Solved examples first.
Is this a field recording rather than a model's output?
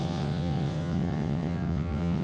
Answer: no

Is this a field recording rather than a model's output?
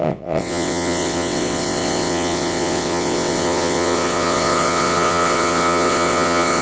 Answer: no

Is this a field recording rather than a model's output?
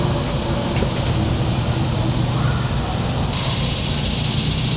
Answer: yes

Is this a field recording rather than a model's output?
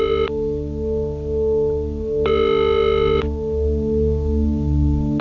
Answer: yes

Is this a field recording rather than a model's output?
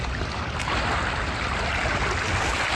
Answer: yes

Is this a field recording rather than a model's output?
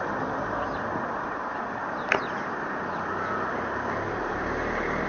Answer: yes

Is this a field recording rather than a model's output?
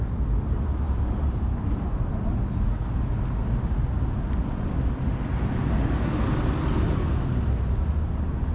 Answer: yes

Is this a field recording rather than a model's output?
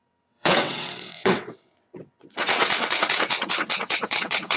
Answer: no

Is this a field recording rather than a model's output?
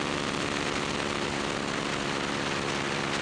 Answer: yes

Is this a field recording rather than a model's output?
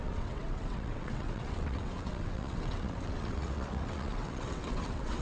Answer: no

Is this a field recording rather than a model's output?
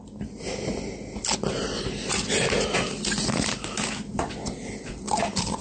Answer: yes